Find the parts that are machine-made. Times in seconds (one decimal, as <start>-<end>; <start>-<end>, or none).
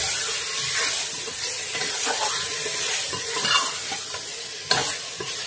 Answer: none